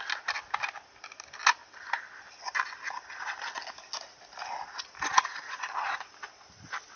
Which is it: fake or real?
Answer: real